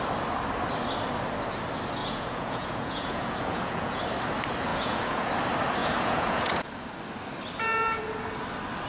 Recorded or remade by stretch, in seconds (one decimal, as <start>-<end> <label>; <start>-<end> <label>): 0.0-2.0 recorded; 2.0-4.0 remade; 4.0-4.7 recorded; 4.7-5.3 remade; 5.3-5.8 recorded; 5.8-6.7 remade; 6.7-8.9 recorded